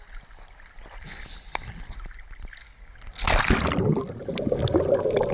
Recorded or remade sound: recorded